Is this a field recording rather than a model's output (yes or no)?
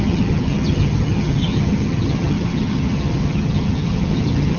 no